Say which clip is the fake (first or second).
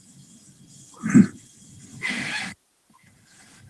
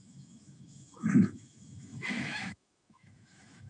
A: second